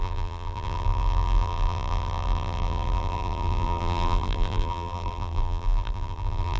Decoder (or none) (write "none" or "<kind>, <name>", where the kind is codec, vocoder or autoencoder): vocoder, BigVGAN v2